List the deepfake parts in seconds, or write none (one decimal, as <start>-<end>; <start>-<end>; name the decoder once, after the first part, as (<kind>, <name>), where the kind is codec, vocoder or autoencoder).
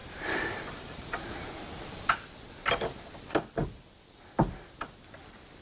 0.0-2.1 (vocoder, BigVGAN v2)